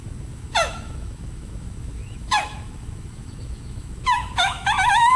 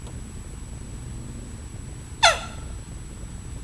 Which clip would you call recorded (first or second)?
second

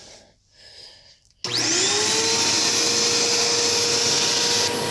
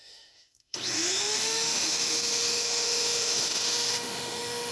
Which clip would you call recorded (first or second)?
first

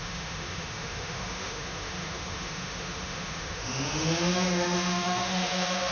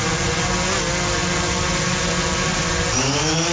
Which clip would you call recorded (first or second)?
second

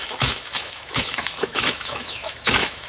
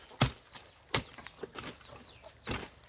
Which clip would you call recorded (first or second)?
second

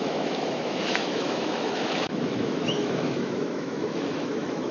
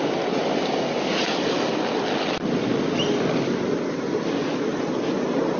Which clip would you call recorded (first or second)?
second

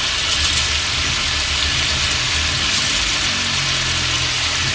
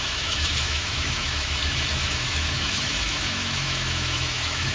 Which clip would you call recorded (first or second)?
first